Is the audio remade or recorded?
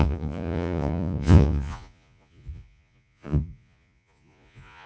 remade